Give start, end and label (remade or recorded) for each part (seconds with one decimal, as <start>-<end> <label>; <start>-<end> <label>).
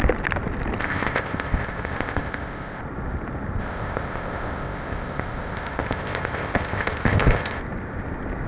0.0-0.8 recorded; 0.8-2.8 remade; 2.8-3.6 recorded; 3.6-7.6 remade; 7.6-8.5 recorded